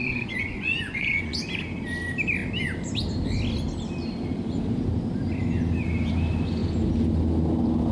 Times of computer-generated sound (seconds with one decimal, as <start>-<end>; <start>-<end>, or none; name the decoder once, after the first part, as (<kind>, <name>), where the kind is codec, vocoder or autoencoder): 0.0-1.4 (vocoder, Vocos)